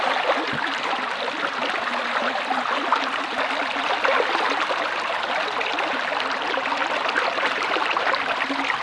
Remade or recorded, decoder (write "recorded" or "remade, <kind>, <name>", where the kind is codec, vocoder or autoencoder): recorded